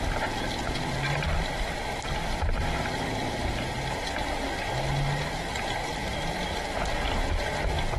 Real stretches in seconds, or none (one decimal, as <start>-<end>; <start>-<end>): 0.0-3.5; 4.7-5.8; 6.3-8.0